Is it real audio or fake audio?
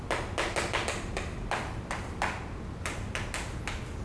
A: real